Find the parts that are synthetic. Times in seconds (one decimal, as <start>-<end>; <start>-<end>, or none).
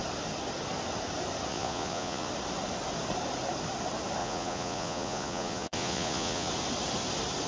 1.5-2.3; 4.2-6.5